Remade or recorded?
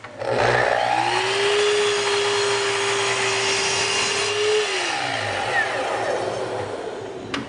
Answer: recorded